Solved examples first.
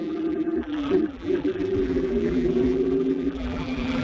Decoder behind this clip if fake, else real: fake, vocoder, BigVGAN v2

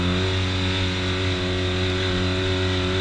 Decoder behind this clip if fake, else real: real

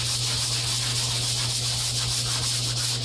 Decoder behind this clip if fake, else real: real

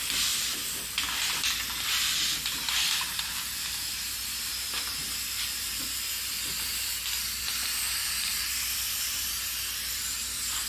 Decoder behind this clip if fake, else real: fake, vocoder, BigVGAN v2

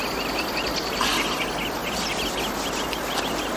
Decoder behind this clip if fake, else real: real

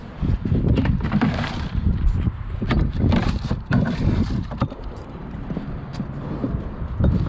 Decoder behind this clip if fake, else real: fake, vocoder, BigVGAN v2